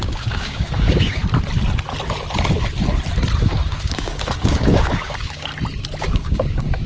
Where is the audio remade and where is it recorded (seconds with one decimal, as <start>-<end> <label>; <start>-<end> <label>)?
0.0-1.2 remade; 1.2-3.4 recorded; 3.4-5.5 remade; 5.5-6.0 recorded; 6.0-6.9 remade